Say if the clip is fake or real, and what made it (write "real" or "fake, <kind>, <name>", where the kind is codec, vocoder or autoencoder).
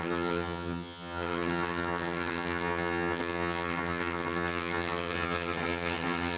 fake, vocoder, HiFi-GAN